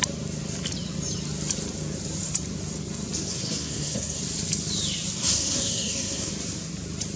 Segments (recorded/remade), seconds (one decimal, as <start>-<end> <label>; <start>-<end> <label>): 0.0-3.3 recorded; 3.3-4.2 remade; 4.2-5.2 recorded; 5.2-6.3 remade; 6.3-7.2 recorded